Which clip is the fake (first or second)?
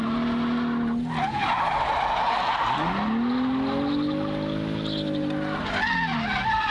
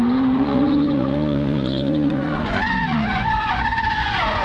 second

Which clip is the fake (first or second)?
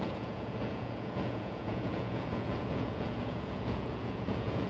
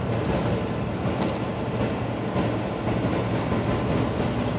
first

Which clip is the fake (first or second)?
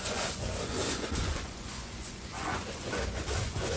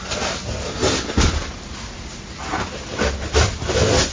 first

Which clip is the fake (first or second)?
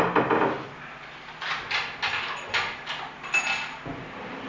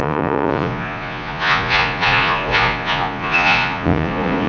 second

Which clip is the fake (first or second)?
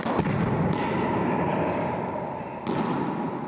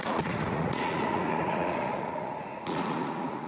second